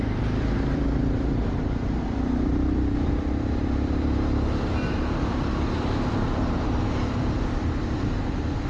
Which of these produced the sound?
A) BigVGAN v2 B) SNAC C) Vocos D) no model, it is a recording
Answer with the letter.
A